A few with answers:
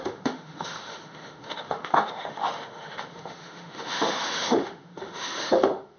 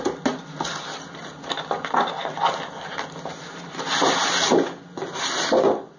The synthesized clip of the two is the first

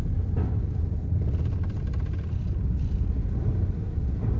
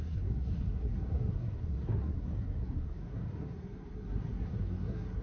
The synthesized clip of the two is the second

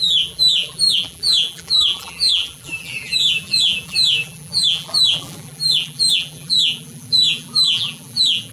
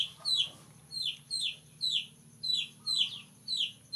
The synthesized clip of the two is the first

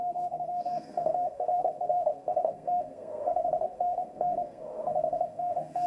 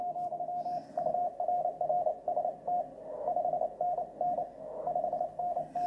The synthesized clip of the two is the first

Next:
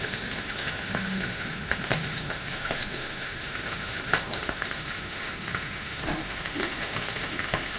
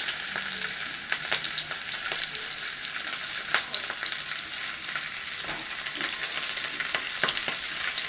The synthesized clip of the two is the first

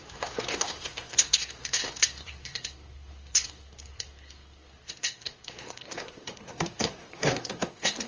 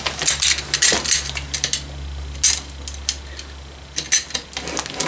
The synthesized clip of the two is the first